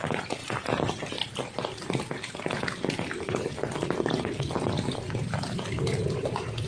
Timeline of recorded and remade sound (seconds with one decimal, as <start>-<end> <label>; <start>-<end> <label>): 0.0-6.7 recorded